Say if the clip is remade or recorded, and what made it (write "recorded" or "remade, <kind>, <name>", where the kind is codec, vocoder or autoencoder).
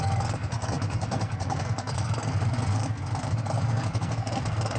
remade, codec, SNAC